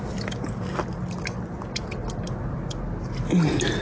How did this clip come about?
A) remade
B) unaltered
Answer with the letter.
B